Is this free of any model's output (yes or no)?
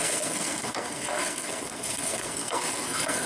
no